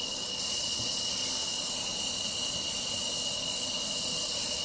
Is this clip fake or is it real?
real